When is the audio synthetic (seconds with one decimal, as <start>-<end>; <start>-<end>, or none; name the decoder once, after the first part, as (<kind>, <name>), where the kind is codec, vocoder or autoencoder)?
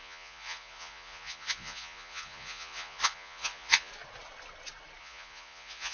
0.0-3.9 (vocoder, Vocos); 5.0-5.9